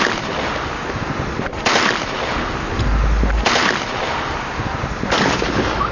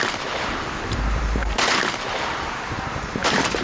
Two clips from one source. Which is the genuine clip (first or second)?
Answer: first